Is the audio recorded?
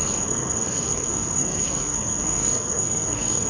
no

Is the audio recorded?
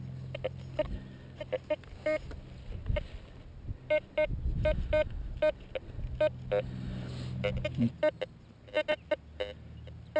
yes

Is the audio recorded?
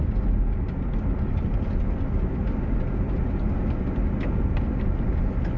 yes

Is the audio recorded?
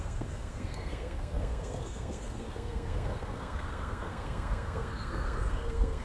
no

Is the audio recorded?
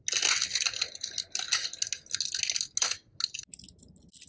yes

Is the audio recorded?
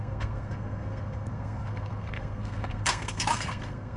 no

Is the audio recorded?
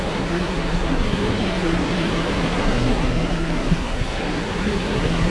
no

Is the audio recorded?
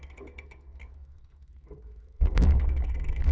no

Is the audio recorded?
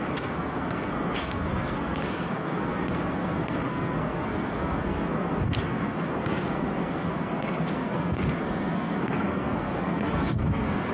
no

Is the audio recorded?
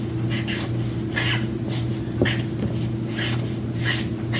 yes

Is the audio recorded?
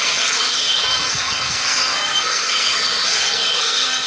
no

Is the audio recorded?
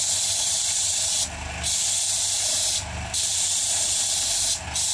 yes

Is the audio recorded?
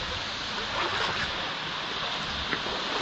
yes